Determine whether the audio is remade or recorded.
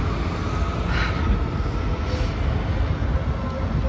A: recorded